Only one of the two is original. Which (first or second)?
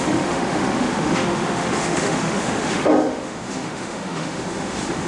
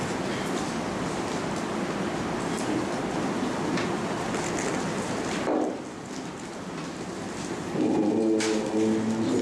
second